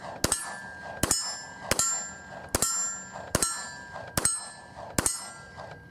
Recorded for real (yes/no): yes